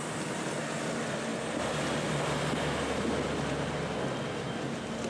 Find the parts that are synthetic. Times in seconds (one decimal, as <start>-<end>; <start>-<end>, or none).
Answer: none